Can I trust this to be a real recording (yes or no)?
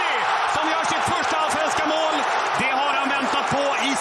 yes